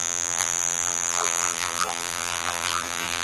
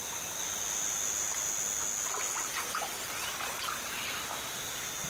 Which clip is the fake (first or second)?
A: first